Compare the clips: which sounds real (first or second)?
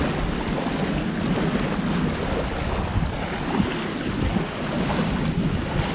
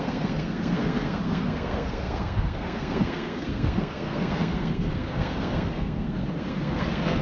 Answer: first